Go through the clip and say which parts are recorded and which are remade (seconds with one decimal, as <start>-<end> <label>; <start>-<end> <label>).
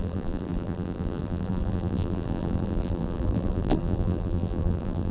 0.0-5.1 remade